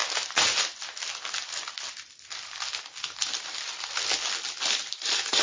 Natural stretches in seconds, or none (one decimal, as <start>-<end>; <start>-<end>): 0.0-5.4